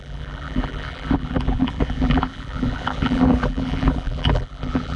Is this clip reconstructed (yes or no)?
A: yes